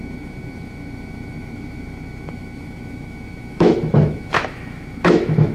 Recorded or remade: remade